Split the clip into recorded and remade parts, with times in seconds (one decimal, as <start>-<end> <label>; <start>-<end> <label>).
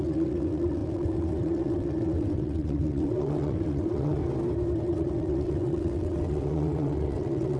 0.0-4.2 remade; 4.2-4.8 recorded; 4.8-7.6 remade